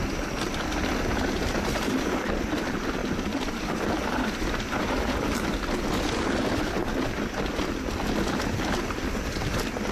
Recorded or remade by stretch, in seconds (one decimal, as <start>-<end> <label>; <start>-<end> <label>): 0.0-3.0 recorded; 3.0-4.8 remade; 4.8-9.9 recorded

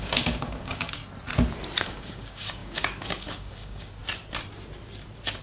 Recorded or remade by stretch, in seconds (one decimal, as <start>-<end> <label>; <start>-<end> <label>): 0.0-1.0 remade; 1.0-1.8 recorded; 1.8-4.0 remade; 4.0-5.4 recorded

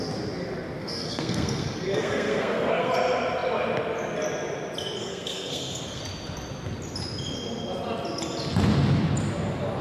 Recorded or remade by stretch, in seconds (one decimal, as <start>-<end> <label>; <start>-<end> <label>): 0.0-0.8 recorded; 0.8-2.9 remade; 2.9-5.0 recorded; 5.0-6.0 remade; 6.0-9.8 recorded

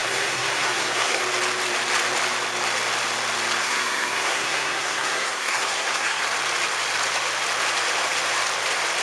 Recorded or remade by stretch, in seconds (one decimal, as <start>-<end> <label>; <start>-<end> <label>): 0.0-1.2 remade; 1.2-3.6 recorded; 3.6-6.2 remade; 6.2-9.0 recorded